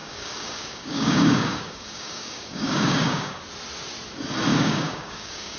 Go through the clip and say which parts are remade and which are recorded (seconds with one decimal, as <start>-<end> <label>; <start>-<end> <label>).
0.0-3.4 remade; 3.4-4.5 recorded; 4.5-5.6 remade